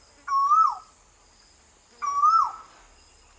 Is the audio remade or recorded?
recorded